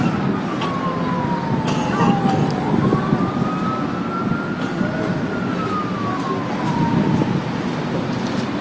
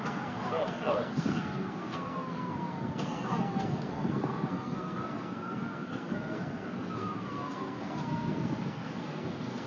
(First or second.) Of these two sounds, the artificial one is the second